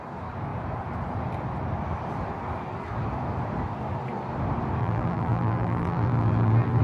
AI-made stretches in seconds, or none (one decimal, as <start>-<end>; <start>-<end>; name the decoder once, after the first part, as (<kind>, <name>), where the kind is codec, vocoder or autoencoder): 4.8-6.8 (vocoder, BigVGAN v2)

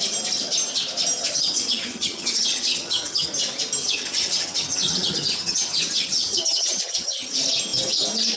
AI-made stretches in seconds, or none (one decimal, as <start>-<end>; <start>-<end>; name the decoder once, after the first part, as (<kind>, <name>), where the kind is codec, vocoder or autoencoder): 1.2-3.3 (vocoder, HiFi-GAN); 3.8-7.3

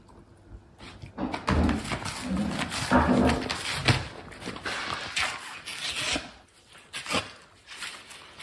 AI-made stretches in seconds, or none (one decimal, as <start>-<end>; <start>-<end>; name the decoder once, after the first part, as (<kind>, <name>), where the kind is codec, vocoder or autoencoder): none

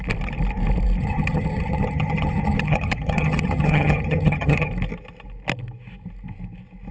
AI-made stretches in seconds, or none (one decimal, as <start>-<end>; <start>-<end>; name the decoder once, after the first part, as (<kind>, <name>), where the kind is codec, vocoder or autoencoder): 1.0-4.7 (vocoder, HiFi-GAN)

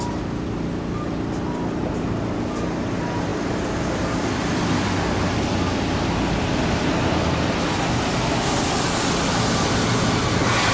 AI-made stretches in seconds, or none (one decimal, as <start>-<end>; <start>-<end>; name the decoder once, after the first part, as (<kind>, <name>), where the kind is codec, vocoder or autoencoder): none

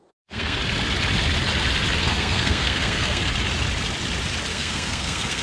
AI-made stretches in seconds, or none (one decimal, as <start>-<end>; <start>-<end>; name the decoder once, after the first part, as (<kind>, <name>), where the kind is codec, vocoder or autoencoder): 0.0-0.6 (codec, SNAC); 2.0-3.2; 4.5-5.4

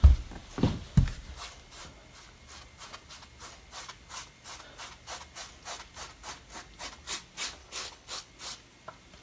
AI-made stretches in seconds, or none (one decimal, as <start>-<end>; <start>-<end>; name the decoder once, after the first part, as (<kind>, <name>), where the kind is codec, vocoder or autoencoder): 7.6-8.3 (codec, HILCodec)